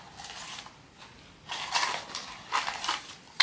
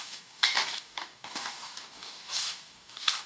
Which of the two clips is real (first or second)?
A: first